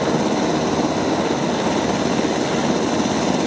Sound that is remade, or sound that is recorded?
recorded